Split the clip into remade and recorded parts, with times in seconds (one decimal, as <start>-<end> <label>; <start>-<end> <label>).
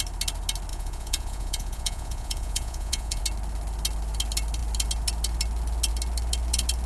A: 0.0-0.7 recorded; 0.7-3.2 remade; 3.2-6.9 recorded